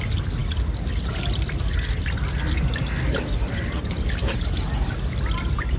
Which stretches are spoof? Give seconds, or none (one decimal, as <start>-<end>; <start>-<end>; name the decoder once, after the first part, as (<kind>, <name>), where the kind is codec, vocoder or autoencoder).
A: none

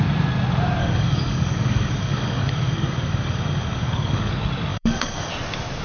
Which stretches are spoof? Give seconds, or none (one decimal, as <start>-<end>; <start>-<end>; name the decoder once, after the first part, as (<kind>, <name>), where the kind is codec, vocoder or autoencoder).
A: 0.8-4.3 (codec, DAC); 4.7-5.3

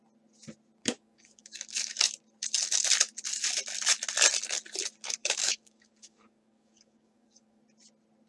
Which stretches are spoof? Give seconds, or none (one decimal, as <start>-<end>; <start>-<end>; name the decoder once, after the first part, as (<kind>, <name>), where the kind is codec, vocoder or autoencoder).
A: 0.8-2.1 (codec, DAC); 5.2-7.6

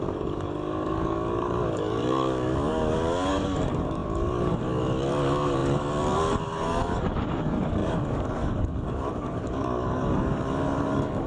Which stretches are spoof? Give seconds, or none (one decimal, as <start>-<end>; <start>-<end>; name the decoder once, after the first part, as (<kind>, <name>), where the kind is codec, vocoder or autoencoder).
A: 0.0-11.3 (codec, DAC)

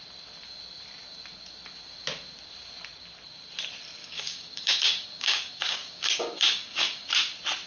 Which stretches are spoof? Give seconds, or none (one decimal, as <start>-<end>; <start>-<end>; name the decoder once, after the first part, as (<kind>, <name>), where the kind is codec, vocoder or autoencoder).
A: 4.0-7.1 (codec, DAC)

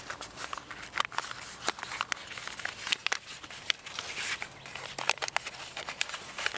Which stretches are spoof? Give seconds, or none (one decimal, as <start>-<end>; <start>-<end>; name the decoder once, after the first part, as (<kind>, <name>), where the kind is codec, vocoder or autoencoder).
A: none